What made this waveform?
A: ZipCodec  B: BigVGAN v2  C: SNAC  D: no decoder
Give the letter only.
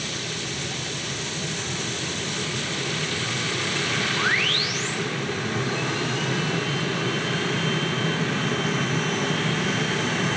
D